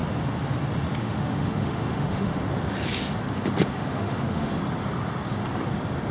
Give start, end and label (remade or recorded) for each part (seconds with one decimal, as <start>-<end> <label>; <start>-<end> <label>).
0.0-1.0 recorded; 1.0-2.4 remade; 2.4-3.7 recorded; 3.7-4.6 remade; 4.6-6.1 recorded